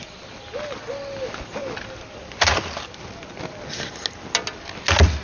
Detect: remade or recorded recorded